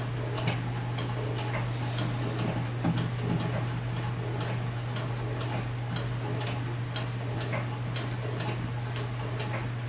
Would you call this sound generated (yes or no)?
no